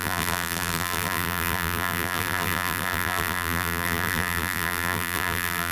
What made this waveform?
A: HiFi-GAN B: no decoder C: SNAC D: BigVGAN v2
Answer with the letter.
D